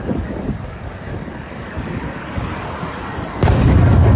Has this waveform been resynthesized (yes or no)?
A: yes